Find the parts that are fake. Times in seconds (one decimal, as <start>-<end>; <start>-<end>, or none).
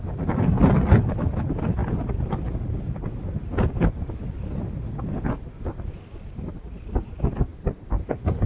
none